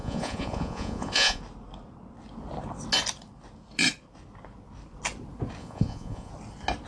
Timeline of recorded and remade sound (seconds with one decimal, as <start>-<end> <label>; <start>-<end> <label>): 0.0-1.4 remade; 1.4-5.6 recorded; 5.6-6.3 remade; 6.3-6.9 recorded